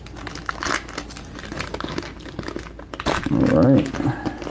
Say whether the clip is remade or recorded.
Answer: recorded